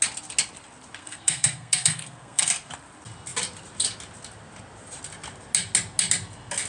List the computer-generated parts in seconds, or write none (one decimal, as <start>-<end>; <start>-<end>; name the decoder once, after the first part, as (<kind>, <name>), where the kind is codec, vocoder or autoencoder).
1.0-2.5 (codec, SNAC)